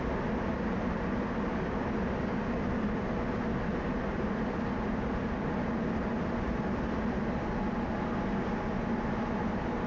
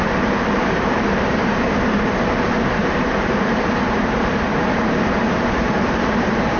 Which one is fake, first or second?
second